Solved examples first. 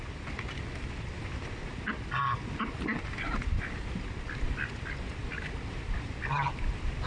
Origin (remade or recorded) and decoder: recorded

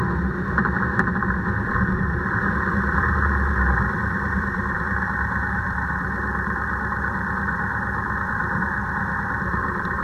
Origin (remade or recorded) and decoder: remade, vocoder, BigVGAN v2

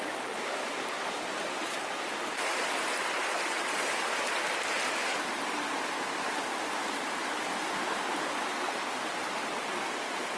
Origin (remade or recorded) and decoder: recorded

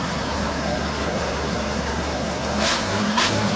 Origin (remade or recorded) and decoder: remade, codec, SNAC